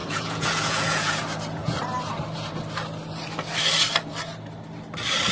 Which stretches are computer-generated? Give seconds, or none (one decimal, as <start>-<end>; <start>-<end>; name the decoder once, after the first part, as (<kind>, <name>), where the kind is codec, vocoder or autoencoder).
0.0-1.2 (vocoder, Vocos)

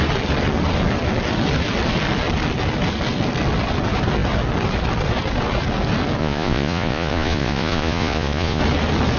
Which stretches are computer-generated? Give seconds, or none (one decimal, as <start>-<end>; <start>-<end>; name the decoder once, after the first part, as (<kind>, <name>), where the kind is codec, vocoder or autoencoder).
6.2-8.6 (vocoder, Vocos)

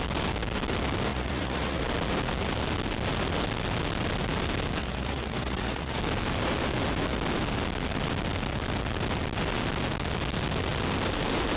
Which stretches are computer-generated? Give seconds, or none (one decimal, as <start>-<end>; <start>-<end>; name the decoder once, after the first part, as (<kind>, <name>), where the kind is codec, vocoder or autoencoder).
1.1-1.8 (vocoder, Vocos); 4.8-6.0

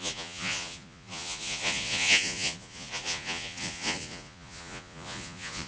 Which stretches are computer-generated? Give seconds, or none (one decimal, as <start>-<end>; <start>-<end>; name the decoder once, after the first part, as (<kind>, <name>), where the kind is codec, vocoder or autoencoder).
0.0-5.7 (vocoder, Vocos)

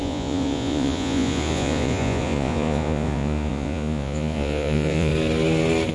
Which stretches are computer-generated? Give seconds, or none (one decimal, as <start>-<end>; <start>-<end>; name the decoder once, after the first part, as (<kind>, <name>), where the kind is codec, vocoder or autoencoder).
0.0-5.1 (vocoder, Vocos)

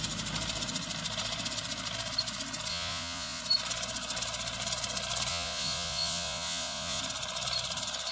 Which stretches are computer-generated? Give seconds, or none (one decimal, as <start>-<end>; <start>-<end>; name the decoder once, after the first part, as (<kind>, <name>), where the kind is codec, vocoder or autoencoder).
2.7-3.4 (vocoder, Vocos); 5.3-7.0

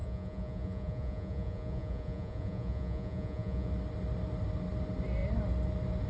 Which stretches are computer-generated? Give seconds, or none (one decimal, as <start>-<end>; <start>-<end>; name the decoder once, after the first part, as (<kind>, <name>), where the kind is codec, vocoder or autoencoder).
0.0-3.7 (vocoder, Vocos)

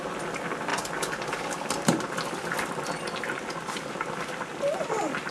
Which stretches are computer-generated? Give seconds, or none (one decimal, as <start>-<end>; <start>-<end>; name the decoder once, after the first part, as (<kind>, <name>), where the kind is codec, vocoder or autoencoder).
none